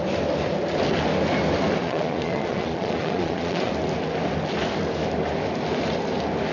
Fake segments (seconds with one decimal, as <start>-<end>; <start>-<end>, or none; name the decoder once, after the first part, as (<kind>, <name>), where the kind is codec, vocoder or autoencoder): 1.8-3.7 (vocoder, Vocos)